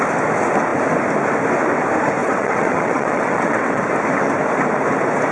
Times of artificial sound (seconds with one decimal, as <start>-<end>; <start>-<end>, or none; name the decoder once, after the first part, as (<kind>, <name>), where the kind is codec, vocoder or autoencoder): 2.2-3.8 (vocoder, WaveNeXt)